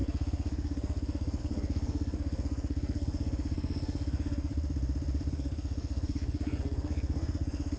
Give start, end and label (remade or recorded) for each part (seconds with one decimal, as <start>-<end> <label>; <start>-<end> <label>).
0.0-4.5 remade; 4.5-5.3 recorded; 5.3-7.8 remade